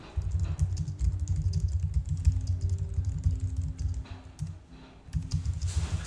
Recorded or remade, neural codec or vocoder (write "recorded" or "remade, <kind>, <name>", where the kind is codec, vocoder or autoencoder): recorded